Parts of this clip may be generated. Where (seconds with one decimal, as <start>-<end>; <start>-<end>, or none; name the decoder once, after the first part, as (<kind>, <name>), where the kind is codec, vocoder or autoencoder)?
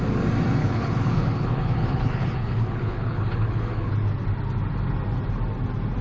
0.6-3.9 (codec, HILCodec)